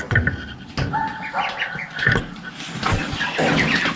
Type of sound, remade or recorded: recorded